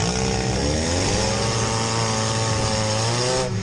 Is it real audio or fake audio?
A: real